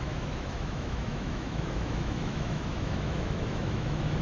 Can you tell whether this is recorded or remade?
remade